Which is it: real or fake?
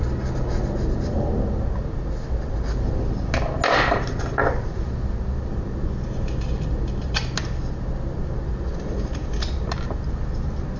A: real